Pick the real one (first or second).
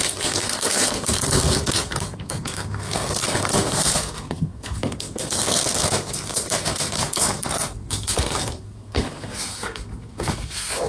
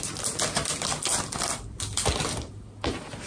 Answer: second